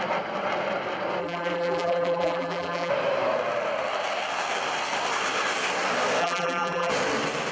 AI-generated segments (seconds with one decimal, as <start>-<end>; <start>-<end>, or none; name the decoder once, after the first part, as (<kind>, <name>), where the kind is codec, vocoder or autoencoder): 1.2-2.9 (vocoder, BigVGAN v2); 6.2-6.9